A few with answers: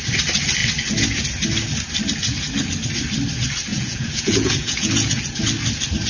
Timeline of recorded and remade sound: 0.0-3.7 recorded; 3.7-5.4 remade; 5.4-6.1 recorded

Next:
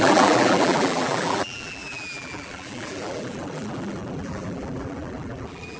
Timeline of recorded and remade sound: 0.0-5.8 remade

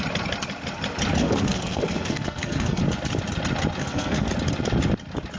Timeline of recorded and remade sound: 0.0-1.2 recorded; 1.2-2.8 remade; 2.8-3.8 recorded; 3.8-4.3 remade; 4.3-5.4 recorded

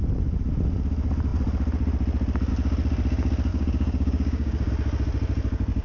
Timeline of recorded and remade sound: 0.0-3.5 recorded; 3.5-4.7 remade; 4.7-5.8 recorded